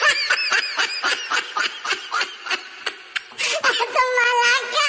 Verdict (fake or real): real